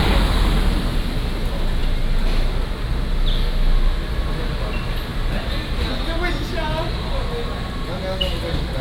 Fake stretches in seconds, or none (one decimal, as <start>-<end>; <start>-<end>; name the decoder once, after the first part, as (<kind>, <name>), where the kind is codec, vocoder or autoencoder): none